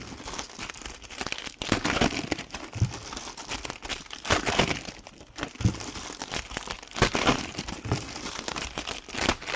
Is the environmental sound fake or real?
real